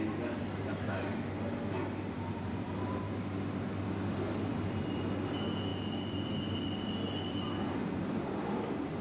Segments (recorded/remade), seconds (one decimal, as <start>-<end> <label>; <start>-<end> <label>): 0.0-4.5 recorded; 4.5-5.0 remade; 5.0-5.7 recorded; 5.7-6.5 remade; 6.5-7.8 recorded; 7.8-9.0 remade

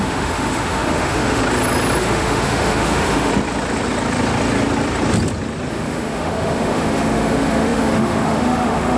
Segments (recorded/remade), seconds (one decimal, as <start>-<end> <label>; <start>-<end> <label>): 0.0-1.4 remade; 1.4-2.0 recorded; 2.0-3.3 remade; 3.3-5.7 recorded; 5.7-9.0 remade

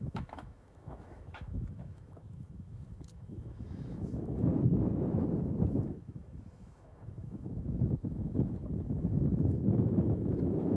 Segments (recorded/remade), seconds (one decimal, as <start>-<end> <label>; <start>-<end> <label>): 0.0-4.5 remade; 4.5-5.7 recorded; 5.7-10.8 remade

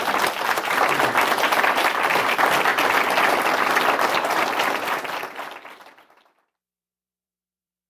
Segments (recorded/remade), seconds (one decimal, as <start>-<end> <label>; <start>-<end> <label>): 0.0-2.7 remade; 2.7-3.7 recorded; 3.7-7.9 remade

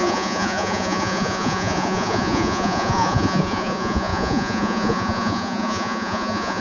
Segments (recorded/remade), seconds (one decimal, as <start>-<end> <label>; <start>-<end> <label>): 0.0-6.6 remade

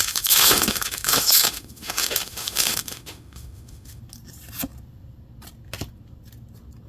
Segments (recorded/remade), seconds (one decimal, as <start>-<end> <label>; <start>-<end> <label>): 0.0-4.0 remade; 4.0-6.9 recorded

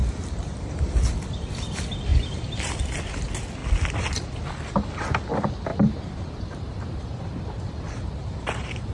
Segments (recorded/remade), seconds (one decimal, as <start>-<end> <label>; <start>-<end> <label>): 0.0-2.1 recorded; 2.1-2.7 remade; 2.7-5.7 recorded; 5.7-8.9 remade

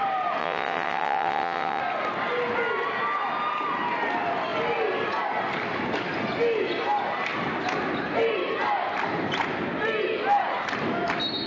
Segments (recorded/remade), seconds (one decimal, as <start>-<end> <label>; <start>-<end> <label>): 0.0-0.4 recorded; 0.4-1.8 remade; 1.8-11.5 recorded